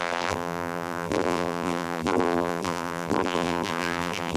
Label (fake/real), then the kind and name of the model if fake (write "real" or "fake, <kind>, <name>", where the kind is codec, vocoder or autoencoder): fake, vocoder, BigVGAN v2